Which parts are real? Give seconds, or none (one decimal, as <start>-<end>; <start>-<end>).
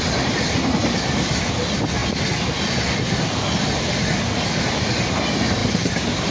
0.0-0.8; 1.4-5.6